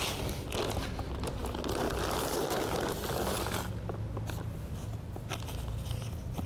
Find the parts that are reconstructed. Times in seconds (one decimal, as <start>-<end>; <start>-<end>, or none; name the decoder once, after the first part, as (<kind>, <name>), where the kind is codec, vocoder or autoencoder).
none